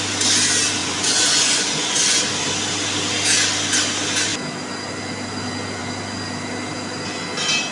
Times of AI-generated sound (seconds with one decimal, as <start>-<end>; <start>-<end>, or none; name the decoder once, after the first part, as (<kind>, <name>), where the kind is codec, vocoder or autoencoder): 0.8-2.2 (vocoder, Vocos)